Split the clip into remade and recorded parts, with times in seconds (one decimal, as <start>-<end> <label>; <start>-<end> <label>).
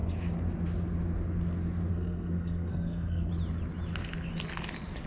0.0-1.9 recorded; 1.9-3.3 remade; 3.3-5.1 recorded